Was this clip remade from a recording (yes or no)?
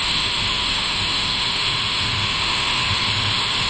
yes